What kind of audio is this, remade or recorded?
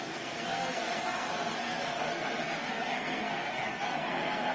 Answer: remade